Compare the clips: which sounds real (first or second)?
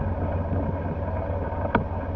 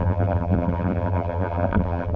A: first